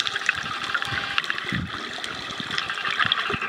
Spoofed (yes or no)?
no